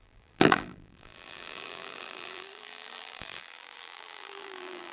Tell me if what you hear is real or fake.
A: fake